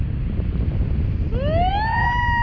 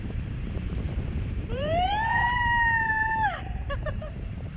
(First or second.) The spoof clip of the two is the second